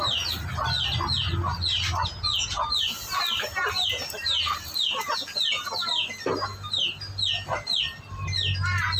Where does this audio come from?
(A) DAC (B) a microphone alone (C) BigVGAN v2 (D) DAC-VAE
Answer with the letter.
B